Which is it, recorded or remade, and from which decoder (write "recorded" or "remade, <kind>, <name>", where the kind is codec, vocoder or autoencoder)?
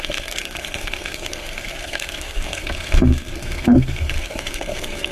remade, codec, SNAC